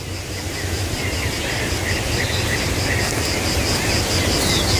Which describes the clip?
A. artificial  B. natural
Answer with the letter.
B